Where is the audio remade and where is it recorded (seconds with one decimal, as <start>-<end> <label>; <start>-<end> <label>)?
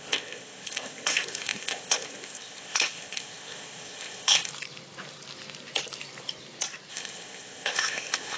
0.0-4.5 remade; 4.5-6.9 recorded; 6.9-8.4 remade